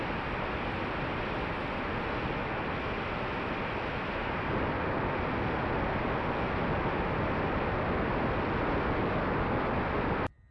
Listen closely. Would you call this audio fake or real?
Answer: real